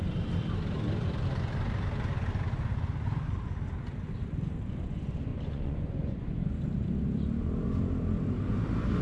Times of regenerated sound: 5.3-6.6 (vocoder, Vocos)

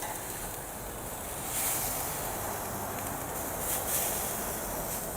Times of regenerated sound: none

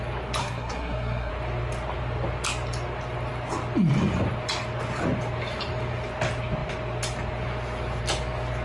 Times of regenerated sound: 0.4-1.3 (codec, SNAC)

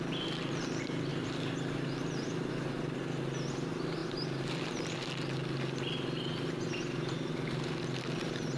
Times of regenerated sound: none

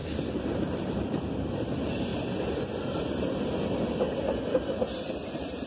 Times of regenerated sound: 0.0-2.1 (vocoder, BigVGAN v2); 5.3-5.7

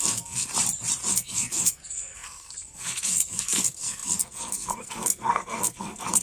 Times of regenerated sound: 0.0-0.5 (codec, SNAC); 1.1-6.2

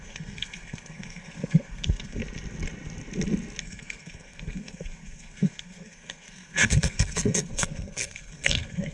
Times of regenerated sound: 0.0-2.2 (codec, SNAC); 3.6-8.9

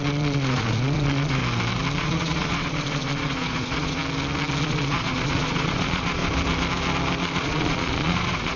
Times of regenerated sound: 0.0-1.4 (vocoder, Vocos); 2.0-4.0; 4.6-6.2; 7.4-8.6